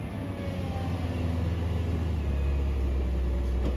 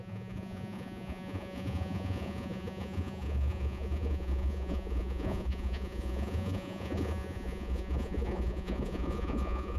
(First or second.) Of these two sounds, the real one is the first